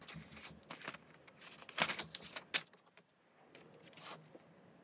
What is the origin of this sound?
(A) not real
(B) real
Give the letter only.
B